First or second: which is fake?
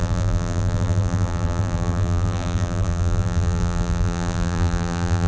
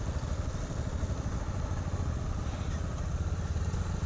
first